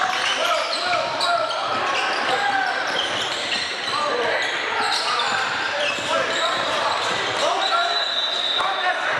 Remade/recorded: remade